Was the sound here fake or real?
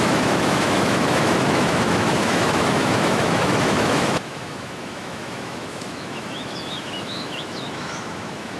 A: fake